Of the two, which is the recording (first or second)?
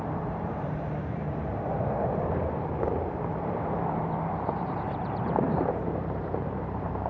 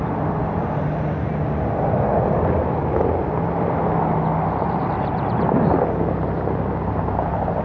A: second